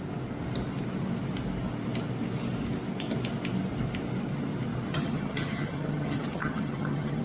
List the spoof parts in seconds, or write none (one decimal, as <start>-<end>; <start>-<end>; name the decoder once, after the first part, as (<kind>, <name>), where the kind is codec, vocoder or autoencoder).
4.9-7.2 (vocoder, HiFi-GAN)